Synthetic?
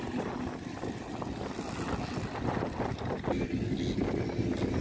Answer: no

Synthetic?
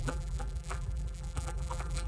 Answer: yes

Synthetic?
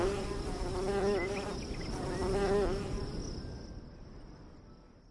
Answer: no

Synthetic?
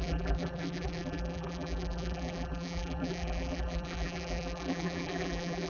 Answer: yes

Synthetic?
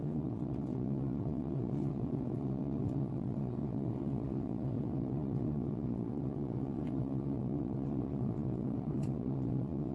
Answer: yes